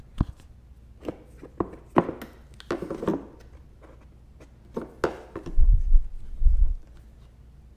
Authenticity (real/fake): real